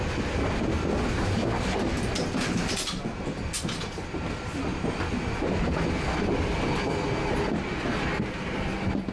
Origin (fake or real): real